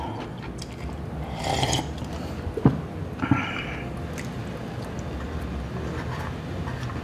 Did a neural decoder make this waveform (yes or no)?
no